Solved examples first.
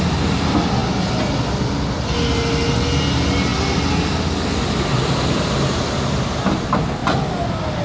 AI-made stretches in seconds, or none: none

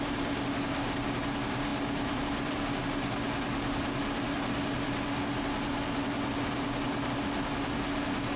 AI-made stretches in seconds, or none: none

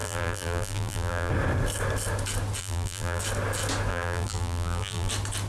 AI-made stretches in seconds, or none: 0.0-1.3 (vocoder, BigVGAN v2); 2.6-3.2; 3.9-5.1

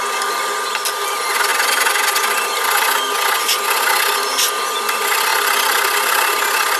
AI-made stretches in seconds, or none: none

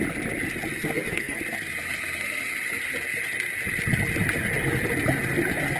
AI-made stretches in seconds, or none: 0.7-1.4 (codec, SNAC)

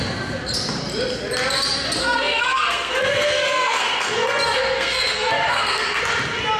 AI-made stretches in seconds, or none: 2.0-6.0 (codec, SNAC)